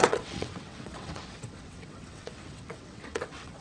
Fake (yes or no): yes